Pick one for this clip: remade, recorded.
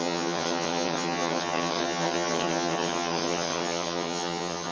remade